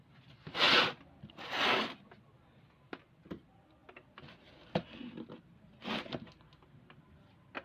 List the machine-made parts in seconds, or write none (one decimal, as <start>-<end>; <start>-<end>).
none